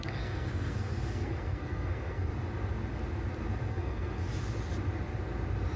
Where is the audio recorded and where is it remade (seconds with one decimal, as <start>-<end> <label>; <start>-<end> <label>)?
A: 0.0-2.3 remade; 2.3-3.7 recorded; 3.7-4.2 remade; 4.2-5.8 recorded